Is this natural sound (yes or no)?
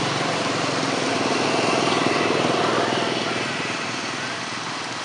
yes